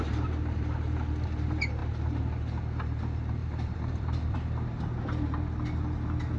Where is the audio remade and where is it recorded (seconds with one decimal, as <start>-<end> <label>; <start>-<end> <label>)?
0.0-3.4 recorded; 3.4-4.5 remade; 4.5-6.4 recorded